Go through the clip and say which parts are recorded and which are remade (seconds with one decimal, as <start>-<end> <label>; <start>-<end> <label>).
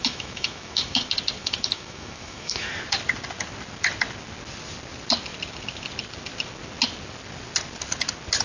0.0-1.0 remade; 1.0-1.4 recorded; 1.4-2.7 remade; 2.7-8.4 recorded